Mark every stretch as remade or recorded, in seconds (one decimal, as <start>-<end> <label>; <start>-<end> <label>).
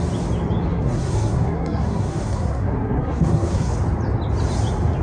0.0-0.7 recorded; 0.7-3.7 remade; 3.7-5.0 recorded